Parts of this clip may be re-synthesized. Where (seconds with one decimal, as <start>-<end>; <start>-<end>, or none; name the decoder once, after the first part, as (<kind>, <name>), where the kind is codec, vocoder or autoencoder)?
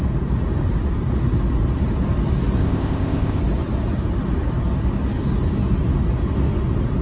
2.6-3.4 (codec, ZipCodec)